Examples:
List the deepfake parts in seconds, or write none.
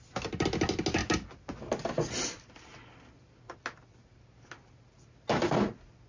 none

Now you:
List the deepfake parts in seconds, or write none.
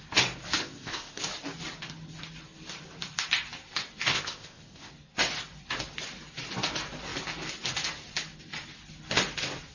0.6-1.2 (codec, ZipCodec); 4.1-4.9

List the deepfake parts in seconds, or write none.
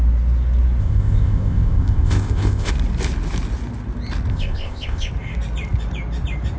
0.8-2.7 (codec, ZipCodec); 4.3-5.1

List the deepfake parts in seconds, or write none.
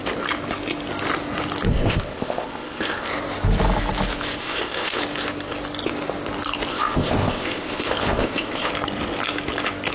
1.7-3.1 (codec, ZipCodec); 4.4-5.0; 6.7-8.7